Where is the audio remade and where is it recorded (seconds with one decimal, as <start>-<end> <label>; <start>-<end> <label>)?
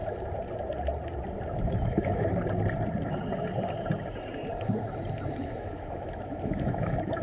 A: 0.0-1.6 recorded; 1.6-2.3 remade; 2.3-5.4 recorded; 5.4-7.2 remade